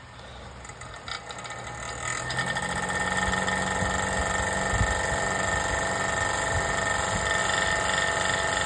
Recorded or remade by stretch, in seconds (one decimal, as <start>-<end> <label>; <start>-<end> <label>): 0.0-8.7 recorded